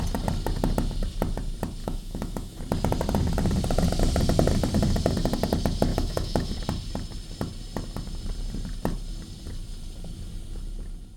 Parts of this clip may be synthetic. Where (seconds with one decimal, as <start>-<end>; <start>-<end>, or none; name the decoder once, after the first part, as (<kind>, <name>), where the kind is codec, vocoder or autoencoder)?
1.8-2.6 (autoencoder, DAC-VAE); 5.9-6.5